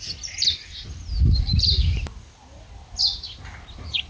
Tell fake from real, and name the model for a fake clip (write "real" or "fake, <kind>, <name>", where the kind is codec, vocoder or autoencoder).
real